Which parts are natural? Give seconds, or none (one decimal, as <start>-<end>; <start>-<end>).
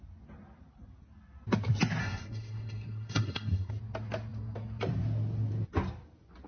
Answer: 0.0-2.0; 3.7-6.5